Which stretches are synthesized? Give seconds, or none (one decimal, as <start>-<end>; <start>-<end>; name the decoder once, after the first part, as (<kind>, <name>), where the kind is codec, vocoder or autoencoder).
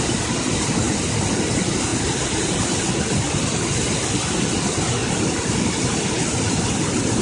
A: none